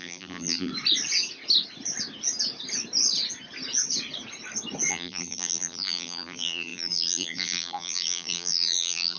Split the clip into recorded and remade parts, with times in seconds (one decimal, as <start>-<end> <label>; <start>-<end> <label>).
0.0-0.7 remade; 0.7-4.9 recorded; 4.9-9.2 remade